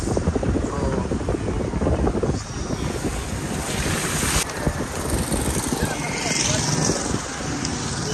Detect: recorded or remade recorded